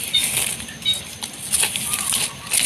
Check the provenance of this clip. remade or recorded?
recorded